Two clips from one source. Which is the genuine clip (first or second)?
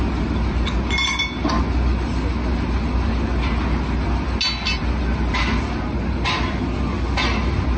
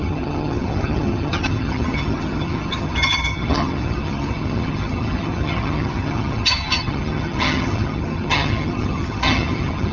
first